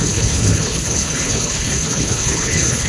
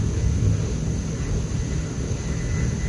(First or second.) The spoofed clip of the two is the first